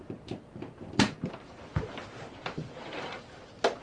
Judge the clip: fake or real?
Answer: fake